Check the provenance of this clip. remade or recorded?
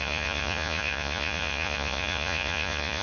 remade